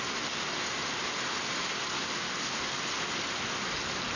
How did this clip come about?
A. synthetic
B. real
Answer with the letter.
B